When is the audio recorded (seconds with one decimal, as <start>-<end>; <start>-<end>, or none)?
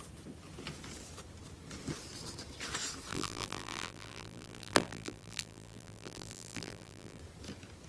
0.0-3.1; 7.2-7.9